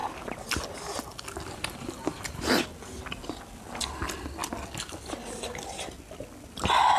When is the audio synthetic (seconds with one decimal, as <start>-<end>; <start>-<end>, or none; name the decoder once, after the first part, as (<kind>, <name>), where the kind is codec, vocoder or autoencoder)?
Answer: 2.1-3.7 (vocoder, BigVGAN v2)